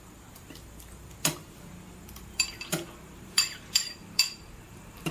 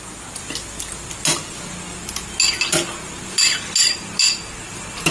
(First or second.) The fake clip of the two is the first